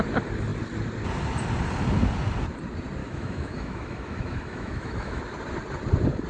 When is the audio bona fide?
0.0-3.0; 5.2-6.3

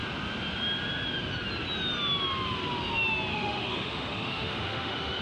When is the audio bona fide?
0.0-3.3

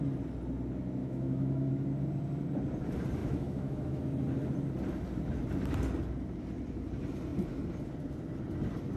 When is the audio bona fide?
0.0-1.0; 1.7-3.2; 4.0-9.0

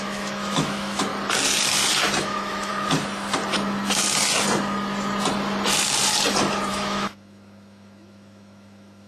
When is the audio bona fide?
1.1-2.2; 2.7-6.7

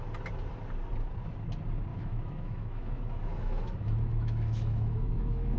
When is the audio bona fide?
0.0-1.9